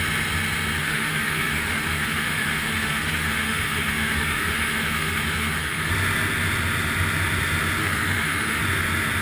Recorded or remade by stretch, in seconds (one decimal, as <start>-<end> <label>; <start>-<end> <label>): 0.0-0.8 recorded; 0.8-5.9 remade; 5.9-7.8 recorded; 7.8-8.6 remade; 8.6-9.2 recorded

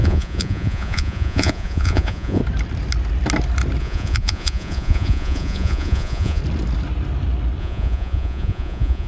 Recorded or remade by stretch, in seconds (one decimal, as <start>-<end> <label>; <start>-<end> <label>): 0.0-2.4 remade; 2.4-3.8 recorded; 3.8-6.4 remade; 6.4-7.6 recorded; 7.6-9.1 remade

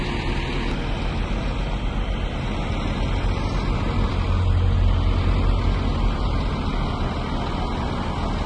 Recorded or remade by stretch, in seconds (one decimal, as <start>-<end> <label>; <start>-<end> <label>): 0.0-5.9 recorded; 5.9-6.7 remade; 6.7-8.5 recorded

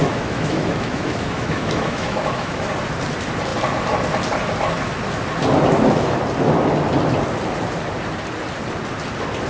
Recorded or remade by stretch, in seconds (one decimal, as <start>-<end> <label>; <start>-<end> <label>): 0.0-2.7 remade; 2.7-9.5 recorded

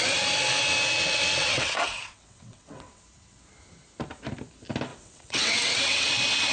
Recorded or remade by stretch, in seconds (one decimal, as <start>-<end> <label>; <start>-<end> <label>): 0.0-1.4 recorded; 1.4-3.0 remade; 3.0-4.9 recorded; 4.9-6.1 remade; 6.1-6.5 recorded